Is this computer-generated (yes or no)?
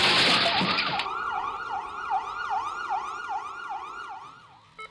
no